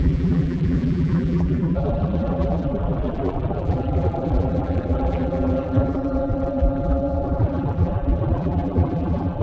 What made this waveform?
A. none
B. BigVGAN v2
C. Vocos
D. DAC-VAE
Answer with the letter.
B